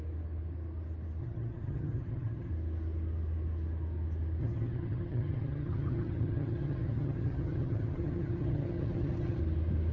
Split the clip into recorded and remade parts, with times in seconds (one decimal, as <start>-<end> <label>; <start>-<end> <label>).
0.0-1.2 recorded; 1.2-2.5 remade; 2.5-4.4 recorded; 4.4-9.4 remade; 9.4-9.9 recorded